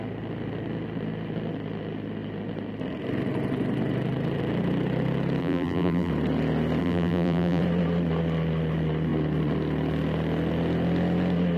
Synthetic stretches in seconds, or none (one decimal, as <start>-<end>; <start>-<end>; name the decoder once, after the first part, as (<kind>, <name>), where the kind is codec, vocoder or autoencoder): 5.4-6.1 (vocoder, BigVGAN v2); 6.8-7.6